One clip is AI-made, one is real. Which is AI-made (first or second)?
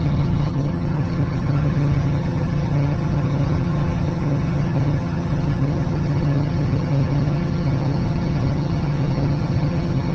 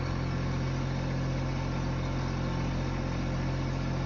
first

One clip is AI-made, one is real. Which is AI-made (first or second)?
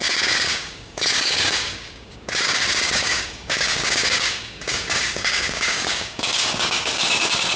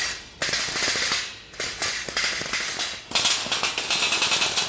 first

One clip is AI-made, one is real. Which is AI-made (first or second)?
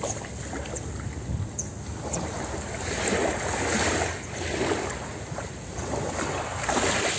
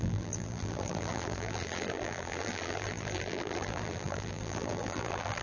second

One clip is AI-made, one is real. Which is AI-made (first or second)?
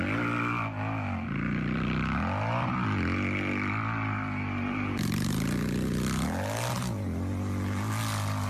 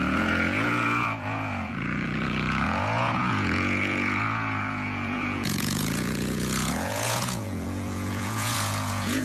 second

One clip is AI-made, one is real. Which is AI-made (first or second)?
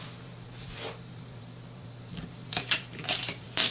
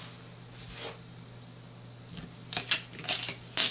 first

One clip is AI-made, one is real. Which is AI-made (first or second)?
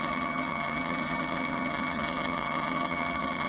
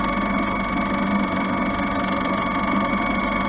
first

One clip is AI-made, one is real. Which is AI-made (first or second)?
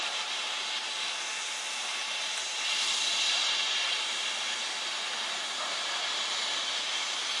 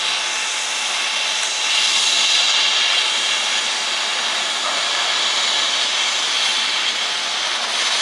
first